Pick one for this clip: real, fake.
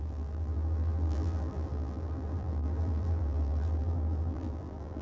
fake